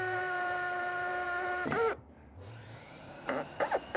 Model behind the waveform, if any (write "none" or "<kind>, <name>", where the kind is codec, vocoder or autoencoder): vocoder, BigVGAN v2